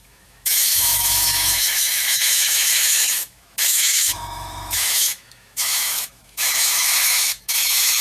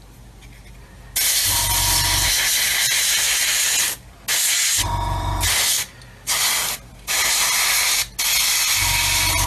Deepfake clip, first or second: first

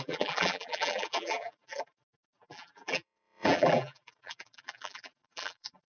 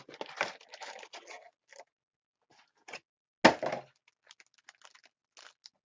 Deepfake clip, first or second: first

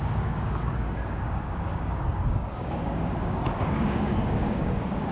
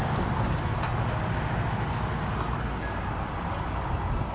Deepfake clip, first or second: first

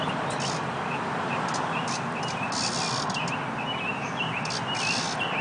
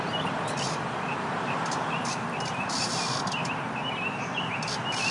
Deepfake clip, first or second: second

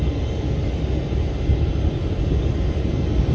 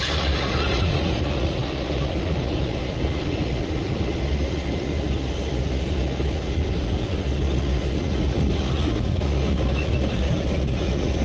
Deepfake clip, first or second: second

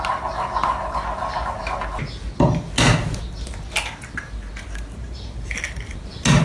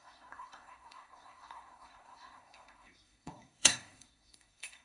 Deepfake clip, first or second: second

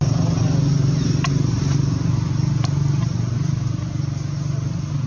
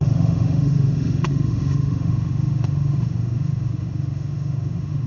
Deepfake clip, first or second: second